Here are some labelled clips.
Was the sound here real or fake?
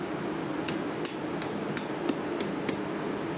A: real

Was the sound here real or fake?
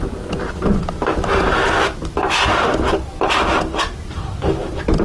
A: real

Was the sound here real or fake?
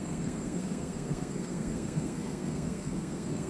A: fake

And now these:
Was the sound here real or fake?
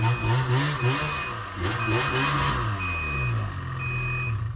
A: real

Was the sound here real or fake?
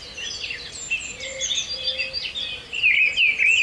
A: real